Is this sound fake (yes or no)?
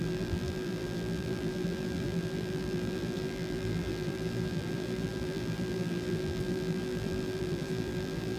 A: yes